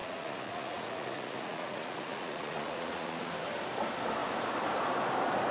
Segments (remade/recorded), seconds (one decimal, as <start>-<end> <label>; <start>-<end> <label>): 0.0-3.3 remade; 3.3-5.5 recorded